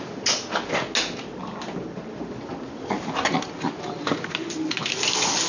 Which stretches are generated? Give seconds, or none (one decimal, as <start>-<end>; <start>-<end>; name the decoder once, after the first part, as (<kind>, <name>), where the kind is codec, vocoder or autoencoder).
none